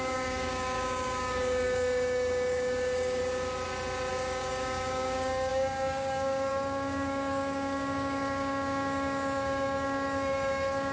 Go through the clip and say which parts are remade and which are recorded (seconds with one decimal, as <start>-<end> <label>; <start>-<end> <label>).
0.0-3.2 remade; 3.2-4.1 recorded; 4.1-10.9 remade